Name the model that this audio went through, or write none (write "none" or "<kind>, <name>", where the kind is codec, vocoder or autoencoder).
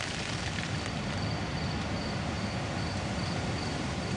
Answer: none